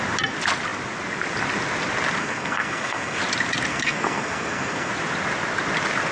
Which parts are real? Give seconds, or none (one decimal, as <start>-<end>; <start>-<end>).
0.0-2.2; 3.2-3.7; 4.9-6.1